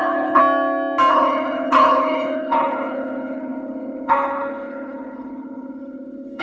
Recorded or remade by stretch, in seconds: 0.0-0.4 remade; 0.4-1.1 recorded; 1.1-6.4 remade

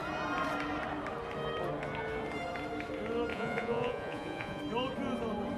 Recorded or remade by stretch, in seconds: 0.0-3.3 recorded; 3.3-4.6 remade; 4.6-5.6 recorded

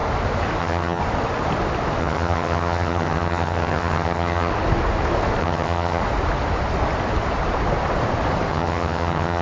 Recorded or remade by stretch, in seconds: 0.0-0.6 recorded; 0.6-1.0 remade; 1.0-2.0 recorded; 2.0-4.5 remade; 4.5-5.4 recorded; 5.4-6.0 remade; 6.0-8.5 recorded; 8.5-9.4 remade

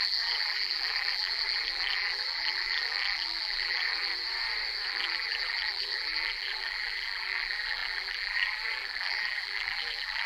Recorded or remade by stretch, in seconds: 0.0-4.1 remade; 4.1-4.9 recorded; 4.9-10.3 remade